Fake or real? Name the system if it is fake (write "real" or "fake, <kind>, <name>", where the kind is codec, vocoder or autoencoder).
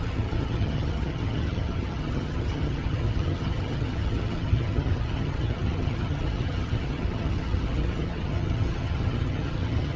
fake, vocoder, HiFi-GAN